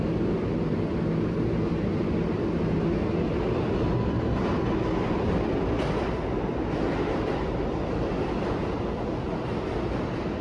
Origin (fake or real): real